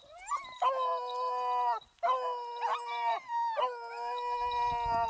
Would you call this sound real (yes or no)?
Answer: yes